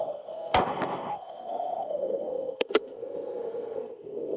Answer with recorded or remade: remade